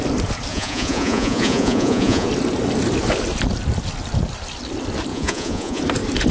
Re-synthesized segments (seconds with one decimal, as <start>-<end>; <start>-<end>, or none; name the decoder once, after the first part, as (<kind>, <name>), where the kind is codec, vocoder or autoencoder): 0.5-2.3 (vocoder, Vocos); 5.1-5.8